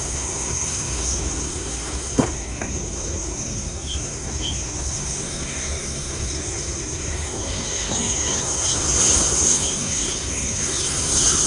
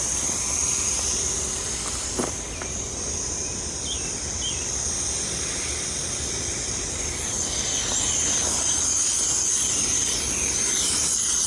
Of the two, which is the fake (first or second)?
first